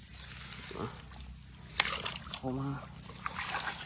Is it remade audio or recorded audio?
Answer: recorded